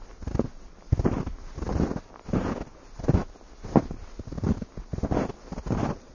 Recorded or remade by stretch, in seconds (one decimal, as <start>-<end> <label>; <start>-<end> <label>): 0.0-6.1 recorded